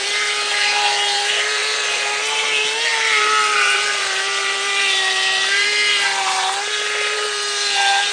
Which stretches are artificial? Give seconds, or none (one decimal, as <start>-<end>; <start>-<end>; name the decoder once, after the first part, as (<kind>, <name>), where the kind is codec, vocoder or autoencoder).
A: 0.0-8.1 (vocoder, BigVGAN v2)